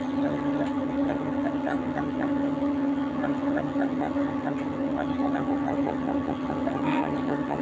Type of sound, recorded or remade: remade